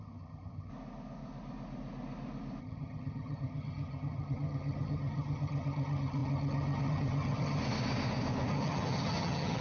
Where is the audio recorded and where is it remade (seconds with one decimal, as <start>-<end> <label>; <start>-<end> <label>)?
0.0-0.7 remade; 0.7-2.6 recorded; 2.6-7.6 remade; 7.6-8.5 recorded; 8.5-9.6 remade